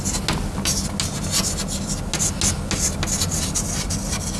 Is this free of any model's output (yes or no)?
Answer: yes